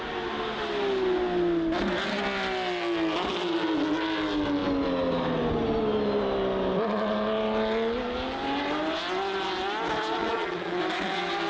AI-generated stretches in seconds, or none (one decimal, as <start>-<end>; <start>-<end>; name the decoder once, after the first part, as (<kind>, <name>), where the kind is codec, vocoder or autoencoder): 10.2-10.8 (vocoder, Vocos)